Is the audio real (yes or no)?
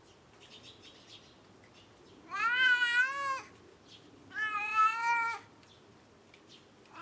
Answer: yes